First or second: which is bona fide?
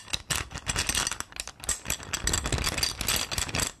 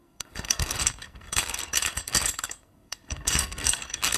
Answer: first